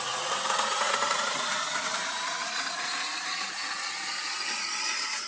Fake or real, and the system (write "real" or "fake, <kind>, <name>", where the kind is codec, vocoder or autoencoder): fake, vocoder, Vocos